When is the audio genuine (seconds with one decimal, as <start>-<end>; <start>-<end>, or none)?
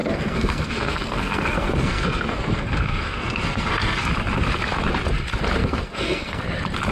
4.1-5.6; 6.4-6.9